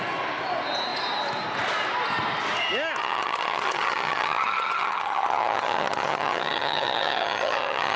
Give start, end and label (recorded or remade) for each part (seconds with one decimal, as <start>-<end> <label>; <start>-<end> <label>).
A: 0.0-3.0 recorded; 3.0-8.0 remade